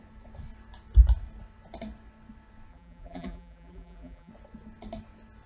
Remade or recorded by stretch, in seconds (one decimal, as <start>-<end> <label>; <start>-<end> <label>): 0.0-2.7 recorded; 2.7-4.3 remade; 4.3-5.5 recorded